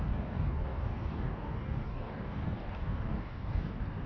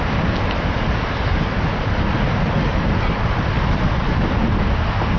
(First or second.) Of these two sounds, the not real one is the first